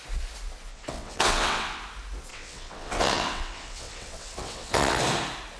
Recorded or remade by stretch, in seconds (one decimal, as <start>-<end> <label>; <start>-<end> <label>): 0.0-0.7 recorded; 0.7-1.8 remade; 1.8-2.3 recorded; 2.3-5.0 remade; 5.0-5.6 recorded